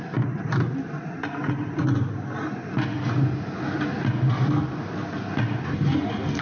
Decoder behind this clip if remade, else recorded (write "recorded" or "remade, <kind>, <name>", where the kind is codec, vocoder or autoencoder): recorded